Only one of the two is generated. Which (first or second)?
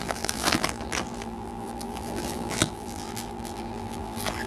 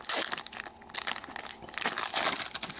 first